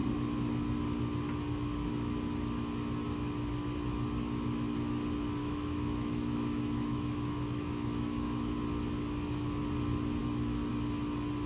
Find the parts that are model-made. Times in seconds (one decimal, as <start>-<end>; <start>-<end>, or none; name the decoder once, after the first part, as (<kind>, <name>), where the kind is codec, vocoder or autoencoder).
5.4-8.5 (autoencoder, DAC-VAE); 10.2-10.7

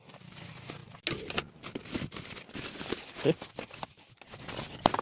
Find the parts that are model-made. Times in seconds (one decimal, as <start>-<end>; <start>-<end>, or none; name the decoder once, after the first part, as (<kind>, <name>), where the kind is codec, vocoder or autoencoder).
none